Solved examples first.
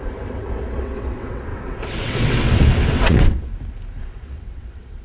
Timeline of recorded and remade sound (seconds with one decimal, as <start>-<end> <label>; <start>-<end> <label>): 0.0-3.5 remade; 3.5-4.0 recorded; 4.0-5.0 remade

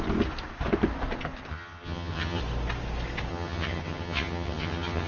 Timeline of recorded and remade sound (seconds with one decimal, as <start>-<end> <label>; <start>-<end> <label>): 0.0-1.5 recorded; 1.5-2.4 remade; 2.4-3.3 recorded; 3.3-5.1 remade

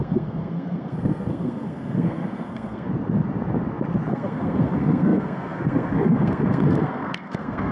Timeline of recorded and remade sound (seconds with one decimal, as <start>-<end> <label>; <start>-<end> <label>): 0.0-2.9 remade; 2.9-4.1 recorded; 4.1-7.7 remade